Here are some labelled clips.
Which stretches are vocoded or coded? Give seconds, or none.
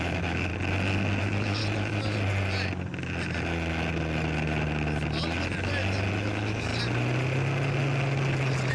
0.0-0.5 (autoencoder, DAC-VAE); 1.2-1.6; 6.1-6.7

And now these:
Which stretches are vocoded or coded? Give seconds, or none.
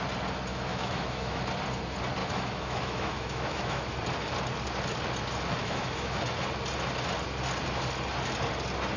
0.5-1.4 (autoencoder, DAC-VAE); 2.2-3.9; 5.6-6.2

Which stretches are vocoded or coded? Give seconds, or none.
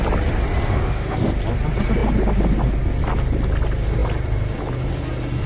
0.7-1.3 (autoencoder, DAC-VAE)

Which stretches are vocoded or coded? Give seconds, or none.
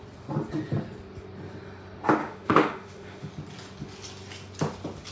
2.2-3.3 (autoencoder, DAC-VAE)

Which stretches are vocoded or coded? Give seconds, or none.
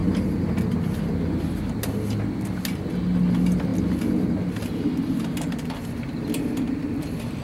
none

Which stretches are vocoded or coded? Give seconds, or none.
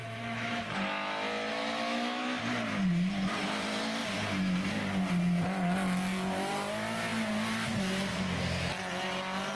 0.0-0.6 (autoencoder, DAC-VAE); 1.5-2.2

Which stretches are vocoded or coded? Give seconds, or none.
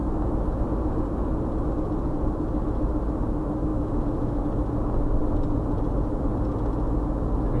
3.7-4.4 (autoencoder, DAC-VAE)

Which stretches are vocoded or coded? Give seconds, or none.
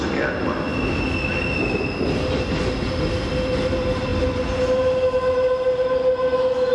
none